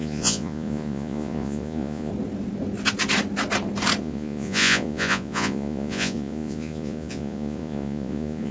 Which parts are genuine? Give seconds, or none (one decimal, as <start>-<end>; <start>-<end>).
2.1-4.0